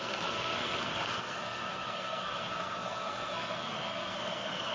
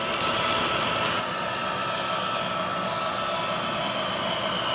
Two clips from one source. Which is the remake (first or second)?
first